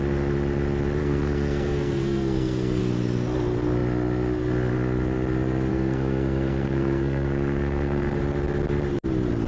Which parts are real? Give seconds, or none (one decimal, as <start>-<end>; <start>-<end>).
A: 0.0-1.0; 2.8-5.7; 8.2-9.5